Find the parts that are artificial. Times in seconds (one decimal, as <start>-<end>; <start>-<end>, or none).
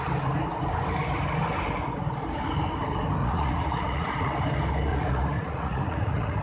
3.2-4.4; 4.9-6.4